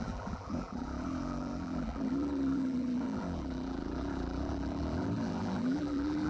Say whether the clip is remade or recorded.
remade